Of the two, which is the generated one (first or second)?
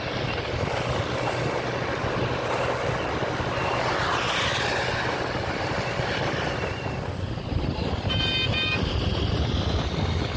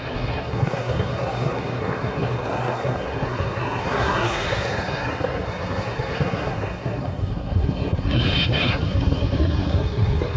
second